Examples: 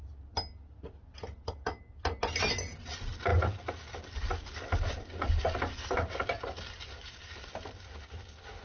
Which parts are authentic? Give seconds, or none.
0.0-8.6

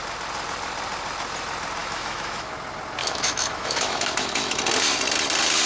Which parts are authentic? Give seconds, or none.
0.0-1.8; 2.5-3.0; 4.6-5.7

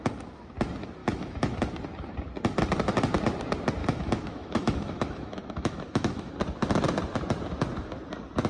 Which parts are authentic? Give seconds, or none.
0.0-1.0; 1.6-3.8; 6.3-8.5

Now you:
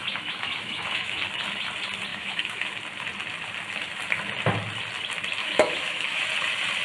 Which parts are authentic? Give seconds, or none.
1.2-2.1; 2.7-5.4; 6.2-6.8

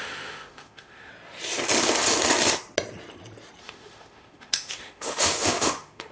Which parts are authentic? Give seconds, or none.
1.1-3.6